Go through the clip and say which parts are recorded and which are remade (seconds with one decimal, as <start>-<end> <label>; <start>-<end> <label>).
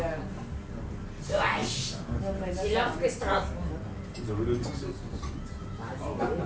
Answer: 0.0-6.5 recorded